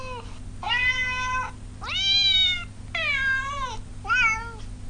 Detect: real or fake real